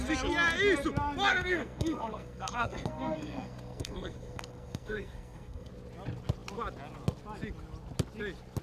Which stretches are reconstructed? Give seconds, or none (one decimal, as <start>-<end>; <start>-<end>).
1.3-5.7